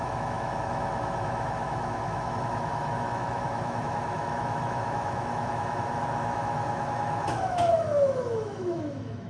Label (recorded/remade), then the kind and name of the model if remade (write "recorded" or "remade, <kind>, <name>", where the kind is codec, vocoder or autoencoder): remade, autoencoder, DAC-VAE